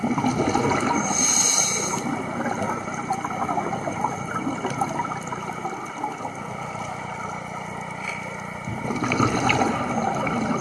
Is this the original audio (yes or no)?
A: yes